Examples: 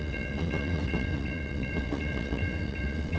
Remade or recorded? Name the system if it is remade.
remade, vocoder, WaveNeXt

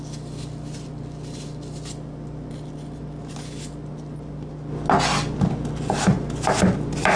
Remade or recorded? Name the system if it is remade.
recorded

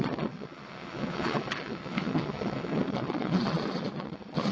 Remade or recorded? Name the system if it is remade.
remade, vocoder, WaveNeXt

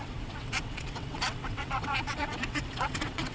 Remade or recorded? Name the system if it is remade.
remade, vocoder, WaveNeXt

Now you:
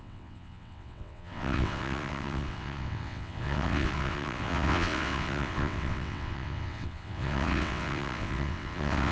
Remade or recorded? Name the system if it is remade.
remade, vocoder, WaveNeXt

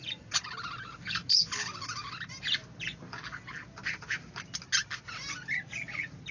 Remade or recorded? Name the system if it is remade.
recorded